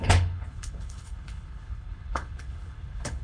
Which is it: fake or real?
fake